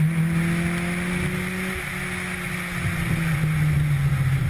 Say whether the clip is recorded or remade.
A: recorded